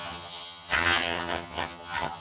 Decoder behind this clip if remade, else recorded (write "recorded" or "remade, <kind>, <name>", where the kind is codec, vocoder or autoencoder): remade, vocoder, HiFi-GAN